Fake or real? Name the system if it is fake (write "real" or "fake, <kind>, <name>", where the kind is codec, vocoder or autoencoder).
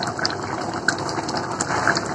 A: fake, vocoder, BigVGAN v2